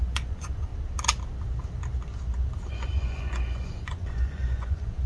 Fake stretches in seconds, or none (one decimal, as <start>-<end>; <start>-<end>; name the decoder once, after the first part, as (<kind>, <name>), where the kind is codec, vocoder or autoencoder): 0.0-0.7 (vocoder, Vocos); 2.7-5.1